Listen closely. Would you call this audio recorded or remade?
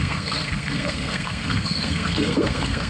remade